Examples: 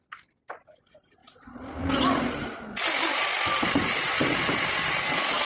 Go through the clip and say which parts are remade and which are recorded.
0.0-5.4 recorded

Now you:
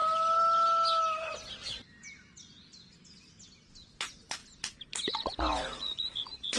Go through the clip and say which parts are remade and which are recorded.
0.0-4.0 recorded; 4.0-4.4 remade; 4.4-5.1 recorded; 5.1-6.6 remade

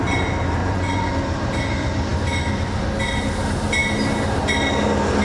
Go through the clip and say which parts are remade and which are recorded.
0.0-0.6 recorded; 0.6-1.1 remade; 1.1-5.2 recorded